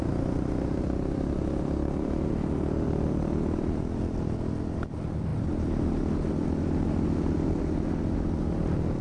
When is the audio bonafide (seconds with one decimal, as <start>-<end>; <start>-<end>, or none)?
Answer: 0.0-9.0